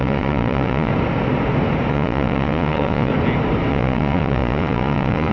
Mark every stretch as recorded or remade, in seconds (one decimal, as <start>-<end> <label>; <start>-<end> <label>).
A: 0.0-0.9 remade; 0.9-1.9 recorded; 1.9-3.1 remade; 3.1-3.7 recorded; 3.7-5.3 remade